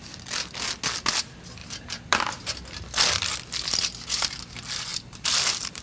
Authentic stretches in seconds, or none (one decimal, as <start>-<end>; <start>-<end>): 0.0-1.6; 2.2-4.9